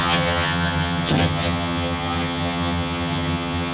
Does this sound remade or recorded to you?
remade